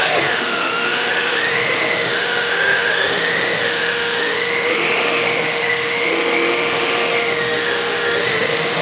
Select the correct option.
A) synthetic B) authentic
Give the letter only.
A